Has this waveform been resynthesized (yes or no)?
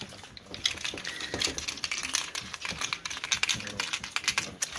no